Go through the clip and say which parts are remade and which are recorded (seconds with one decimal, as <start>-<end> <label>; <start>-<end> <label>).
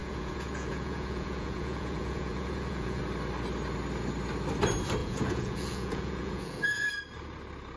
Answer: 0.0-3.0 remade; 3.0-5.0 recorded; 5.0-6.9 remade; 6.9-7.8 recorded